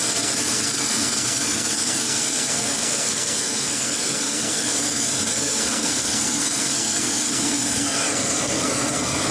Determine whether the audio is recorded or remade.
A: remade